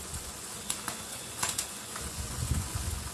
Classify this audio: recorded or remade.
remade